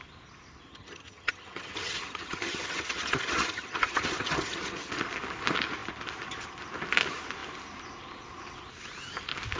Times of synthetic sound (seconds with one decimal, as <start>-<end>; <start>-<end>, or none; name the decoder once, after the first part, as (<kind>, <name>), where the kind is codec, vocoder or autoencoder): 0.7-4.9 (vocoder, HiFi-GAN)